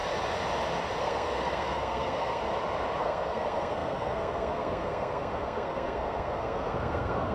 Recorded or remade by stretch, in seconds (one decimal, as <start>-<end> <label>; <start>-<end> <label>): 0.0-1.0 recorded; 1.0-2.4 remade; 2.4-3.0 recorded; 3.0-7.3 remade